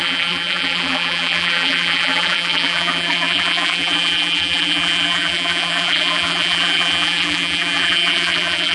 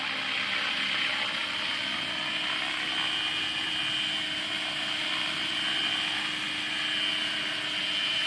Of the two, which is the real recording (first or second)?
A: second